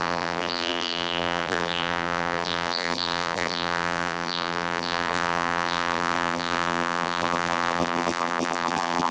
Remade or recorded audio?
remade